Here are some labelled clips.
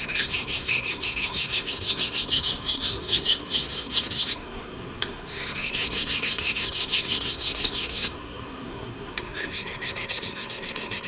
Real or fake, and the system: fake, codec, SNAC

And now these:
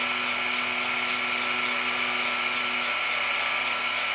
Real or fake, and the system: real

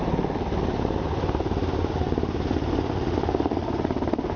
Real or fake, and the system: real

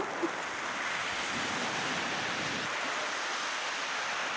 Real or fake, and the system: real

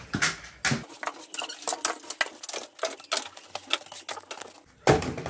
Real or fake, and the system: real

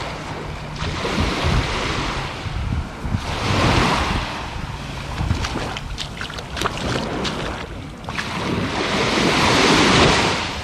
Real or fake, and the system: real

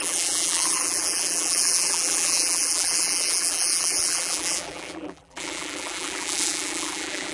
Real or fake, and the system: fake, vocoder, BigVGAN v2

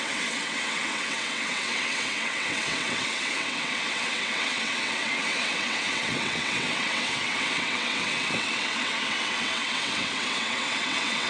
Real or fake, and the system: fake, vocoder, WaveNeXt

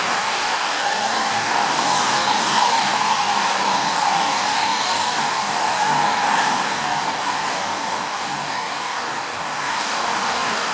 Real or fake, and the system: fake, codec, DAC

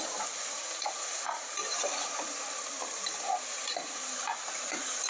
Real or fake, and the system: fake, vocoder, BigVGAN v2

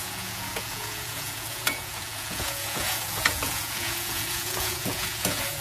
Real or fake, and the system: fake, vocoder, Vocos